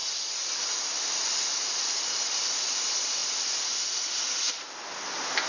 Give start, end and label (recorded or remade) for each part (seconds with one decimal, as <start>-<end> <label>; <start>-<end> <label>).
0.0-5.5 recorded